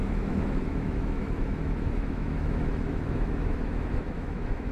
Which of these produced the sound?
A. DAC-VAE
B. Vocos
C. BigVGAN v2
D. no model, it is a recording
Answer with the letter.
A